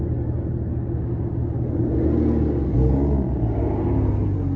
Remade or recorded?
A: recorded